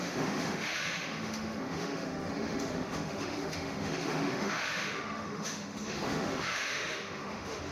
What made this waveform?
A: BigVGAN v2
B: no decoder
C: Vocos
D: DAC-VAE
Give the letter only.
D